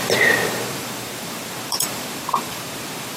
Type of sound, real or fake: fake